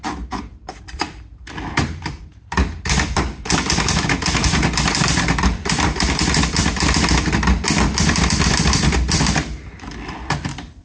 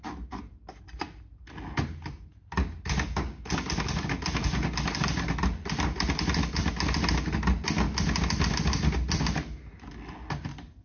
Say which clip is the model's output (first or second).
first